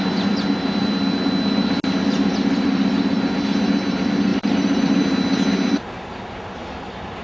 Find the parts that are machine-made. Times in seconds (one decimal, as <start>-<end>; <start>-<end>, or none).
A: 4.3-5.0; 6.6-7.2